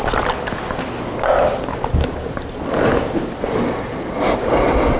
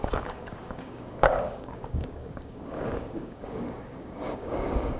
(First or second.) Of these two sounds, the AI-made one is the second